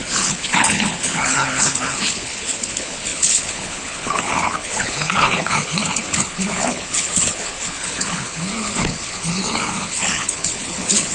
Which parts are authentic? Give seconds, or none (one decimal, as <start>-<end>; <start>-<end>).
none